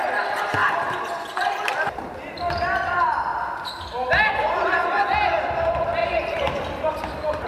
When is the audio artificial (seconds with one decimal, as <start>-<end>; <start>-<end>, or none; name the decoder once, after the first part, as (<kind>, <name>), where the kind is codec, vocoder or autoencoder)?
0.0-0.6 (vocoder, BigVGAN v2); 2.4-3.3; 4.3-7.5